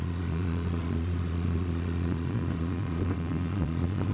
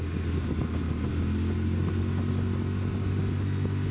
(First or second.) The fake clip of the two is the first